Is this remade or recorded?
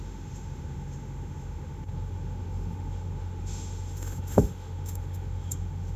remade